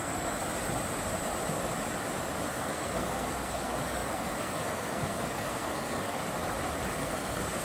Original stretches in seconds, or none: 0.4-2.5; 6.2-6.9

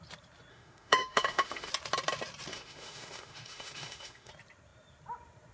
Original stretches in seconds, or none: 0.0-0.5; 1.7-2.5; 4.3-5.5

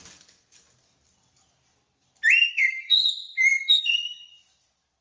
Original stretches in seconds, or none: 0.0-2.5; 3.1-3.5; 4.3-5.0

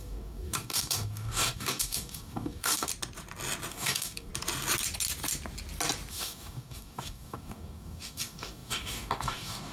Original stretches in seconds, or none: 2.9-3.7; 4.3-6.1

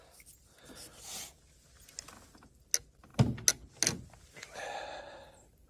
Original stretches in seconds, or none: 0.0-5.7

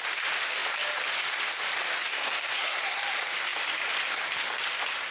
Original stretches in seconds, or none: 0.0-2.1; 3.0-5.1

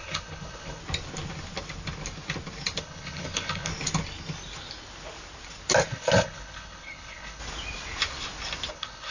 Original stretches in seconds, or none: 0.8-2.8; 3.7-5.9; 7.4-8.7